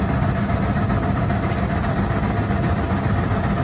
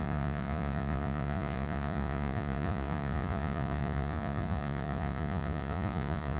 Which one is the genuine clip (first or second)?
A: first